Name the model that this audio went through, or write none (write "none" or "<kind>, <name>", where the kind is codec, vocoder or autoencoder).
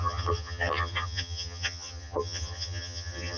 vocoder, HiFi-GAN